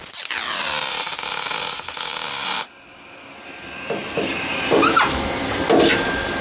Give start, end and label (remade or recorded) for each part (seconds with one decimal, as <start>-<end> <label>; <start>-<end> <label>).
0.0-6.4 recorded